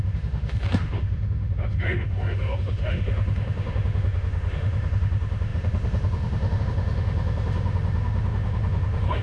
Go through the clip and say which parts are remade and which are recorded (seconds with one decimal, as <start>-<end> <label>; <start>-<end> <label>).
0.0-9.2 remade